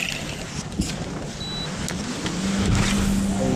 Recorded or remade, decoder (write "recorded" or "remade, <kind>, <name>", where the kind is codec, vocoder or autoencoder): recorded